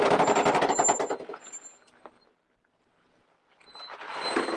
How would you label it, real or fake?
real